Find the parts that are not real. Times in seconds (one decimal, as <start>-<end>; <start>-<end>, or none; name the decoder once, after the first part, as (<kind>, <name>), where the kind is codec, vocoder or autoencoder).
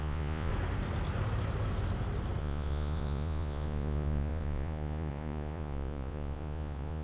0.0-0.5 (vocoder, Vocos); 2.4-7.0